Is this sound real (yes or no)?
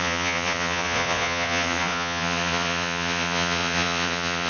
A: no